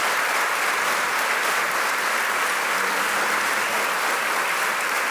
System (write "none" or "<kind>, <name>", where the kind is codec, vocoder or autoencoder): none